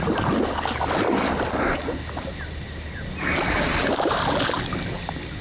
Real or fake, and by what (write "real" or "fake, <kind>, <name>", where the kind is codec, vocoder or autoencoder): real